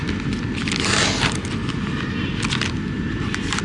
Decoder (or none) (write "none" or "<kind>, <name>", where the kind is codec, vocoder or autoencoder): none